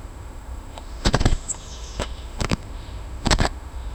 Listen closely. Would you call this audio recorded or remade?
remade